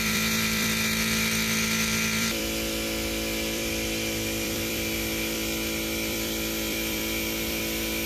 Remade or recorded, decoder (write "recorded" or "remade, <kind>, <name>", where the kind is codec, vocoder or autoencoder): remade, vocoder, BigVGAN v2